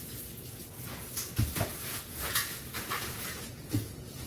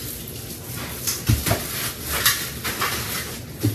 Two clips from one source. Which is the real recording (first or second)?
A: second